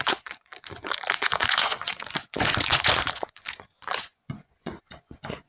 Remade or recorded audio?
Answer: remade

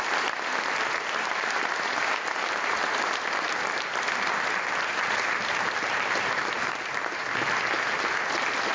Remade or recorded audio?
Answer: remade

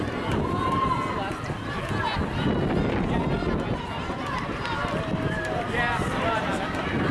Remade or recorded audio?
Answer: recorded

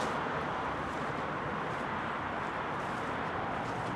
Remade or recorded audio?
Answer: remade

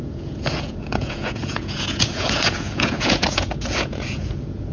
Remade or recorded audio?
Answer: remade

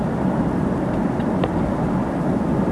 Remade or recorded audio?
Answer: remade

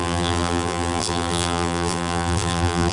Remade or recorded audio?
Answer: remade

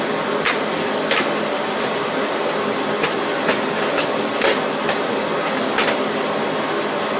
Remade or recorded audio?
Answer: recorded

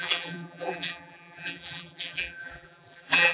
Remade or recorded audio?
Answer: remade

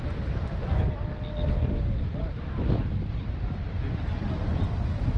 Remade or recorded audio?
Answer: recorded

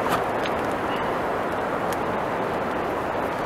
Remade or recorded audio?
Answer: remade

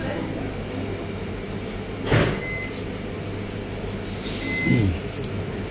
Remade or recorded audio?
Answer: recorded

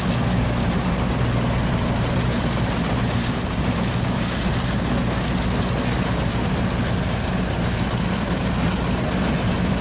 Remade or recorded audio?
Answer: recorded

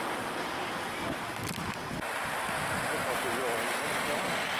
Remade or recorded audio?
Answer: remade